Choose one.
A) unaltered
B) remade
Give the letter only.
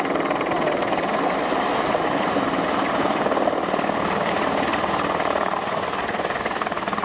A